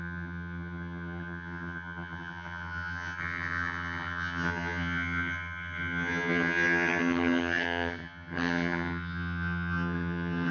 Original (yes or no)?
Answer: no